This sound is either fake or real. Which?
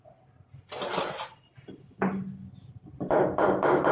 real